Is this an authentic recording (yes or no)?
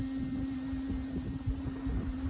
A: yes